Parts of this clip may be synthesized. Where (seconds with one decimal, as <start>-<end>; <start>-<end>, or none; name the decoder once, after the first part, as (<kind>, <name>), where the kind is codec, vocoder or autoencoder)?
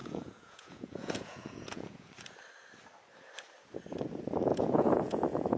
0.0-2.1 (vocoder, Vocos); 4.5-5.6